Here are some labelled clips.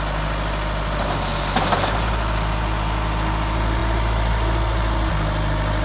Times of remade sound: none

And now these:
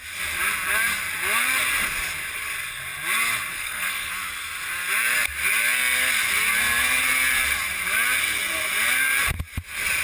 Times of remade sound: 3.5-4.1 (codec, SNAC)